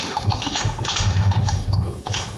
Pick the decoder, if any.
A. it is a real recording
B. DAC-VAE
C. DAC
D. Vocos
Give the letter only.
B